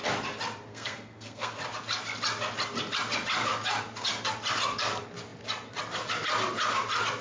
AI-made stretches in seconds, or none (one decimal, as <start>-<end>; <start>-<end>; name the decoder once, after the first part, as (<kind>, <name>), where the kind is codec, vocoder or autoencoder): 0.7-1.5 (codec, SNAC)